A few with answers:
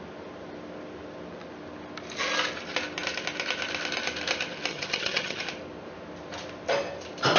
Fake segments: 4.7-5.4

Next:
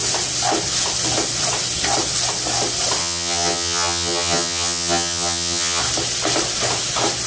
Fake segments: 3.0-5.8

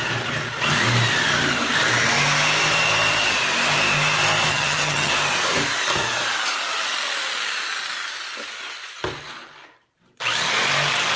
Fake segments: 4.5-5.1